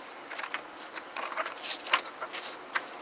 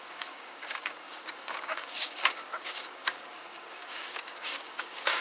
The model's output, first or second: second